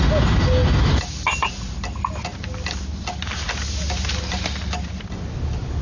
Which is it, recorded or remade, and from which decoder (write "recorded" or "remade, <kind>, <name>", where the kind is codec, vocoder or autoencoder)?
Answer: recorded